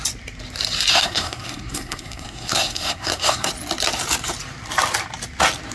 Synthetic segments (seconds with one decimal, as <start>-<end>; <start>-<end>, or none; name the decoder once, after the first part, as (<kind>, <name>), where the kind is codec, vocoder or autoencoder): 0.9-3.5 (codec, SNAC)